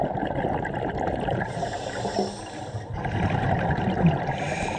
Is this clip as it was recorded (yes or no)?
yes